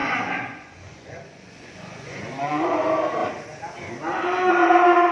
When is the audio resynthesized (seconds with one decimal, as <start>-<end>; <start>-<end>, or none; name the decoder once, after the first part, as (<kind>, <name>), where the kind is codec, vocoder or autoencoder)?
0.0-2.8 (vocoder, Vocos)